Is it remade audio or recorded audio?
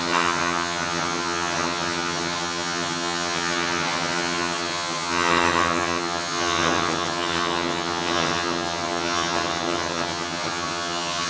remade